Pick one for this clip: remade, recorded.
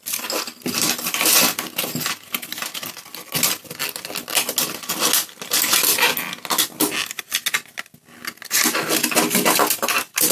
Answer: recorded